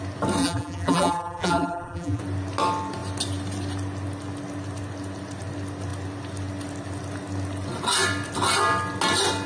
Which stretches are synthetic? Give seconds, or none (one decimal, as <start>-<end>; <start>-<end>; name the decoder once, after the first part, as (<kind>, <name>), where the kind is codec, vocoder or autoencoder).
0.4-2.2 (vocoder, BigVGAN v2)